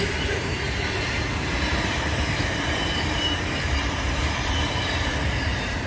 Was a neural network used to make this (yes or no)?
yes